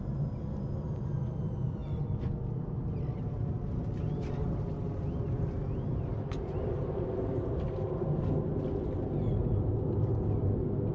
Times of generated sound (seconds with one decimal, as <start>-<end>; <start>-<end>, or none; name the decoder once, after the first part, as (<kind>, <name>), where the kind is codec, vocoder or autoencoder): none